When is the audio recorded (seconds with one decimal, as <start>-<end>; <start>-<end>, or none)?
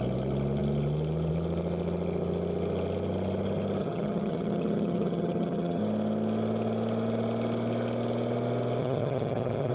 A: 0.0-3.8; 5.8-8.8